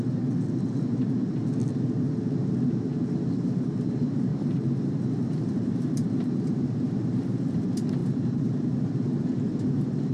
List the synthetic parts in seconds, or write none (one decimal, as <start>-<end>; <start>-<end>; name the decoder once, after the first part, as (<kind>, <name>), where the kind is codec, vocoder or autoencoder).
4.3-7.6 (vocoder, BigVGAN v2); 8.0-8.7